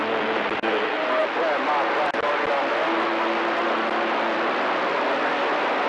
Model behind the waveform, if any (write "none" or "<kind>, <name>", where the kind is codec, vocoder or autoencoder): none